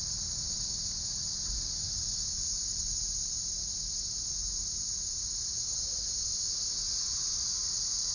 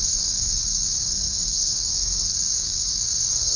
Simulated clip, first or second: second